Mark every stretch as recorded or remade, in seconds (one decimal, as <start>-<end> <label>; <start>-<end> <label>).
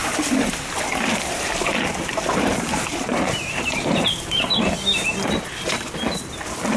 0.0-2.9 recorded; 2.9-4.7 remade; 4.7-6.8 recorded